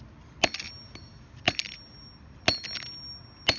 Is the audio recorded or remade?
recorded